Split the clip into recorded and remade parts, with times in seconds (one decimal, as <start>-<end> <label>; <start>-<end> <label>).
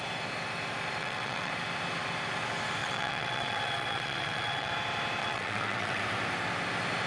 0.0-1.0 recorded; 1.0-1.5 remade; 1.5-2.8 recorded; 2.8-4.7 remade; 4.7-5.2 recorded; 5.2-6.0 remade; 6.0-7.1 recorded